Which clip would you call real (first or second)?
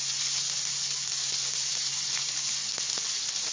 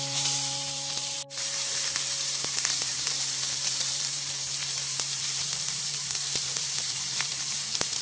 first